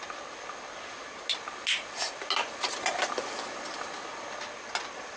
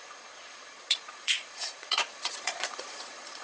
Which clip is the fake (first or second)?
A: second